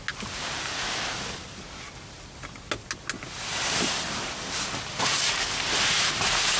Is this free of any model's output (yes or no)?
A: yes